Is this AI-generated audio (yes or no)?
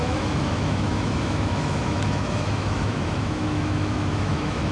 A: yes